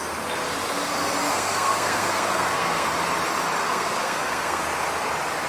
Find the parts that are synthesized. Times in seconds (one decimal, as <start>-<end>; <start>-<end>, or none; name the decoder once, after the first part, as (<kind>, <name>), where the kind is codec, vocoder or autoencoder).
1.2-2.9 (codec, SNAC); 3.6-4.6